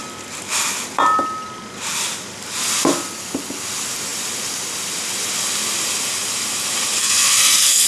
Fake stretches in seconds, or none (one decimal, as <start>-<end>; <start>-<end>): 7.0-7.9